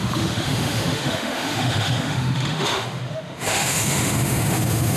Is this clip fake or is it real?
fake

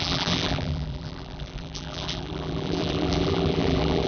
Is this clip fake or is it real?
fake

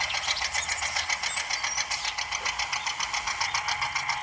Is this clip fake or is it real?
real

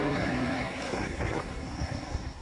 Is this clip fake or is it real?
fake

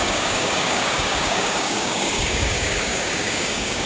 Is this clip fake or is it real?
fake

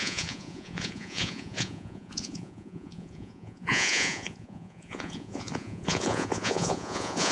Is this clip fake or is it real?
fake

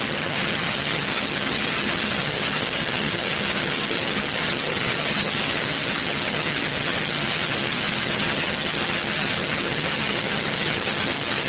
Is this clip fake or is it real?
fake